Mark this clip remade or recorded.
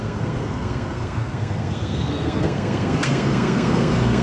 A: remade